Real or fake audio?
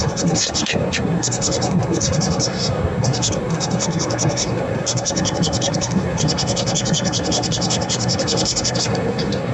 fake